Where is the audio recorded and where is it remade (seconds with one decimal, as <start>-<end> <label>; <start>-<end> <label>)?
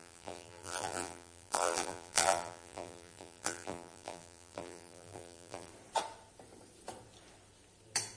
0.0-5.7 remade; 5.7-8.2 recorded